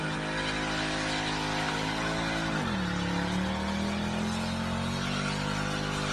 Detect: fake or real real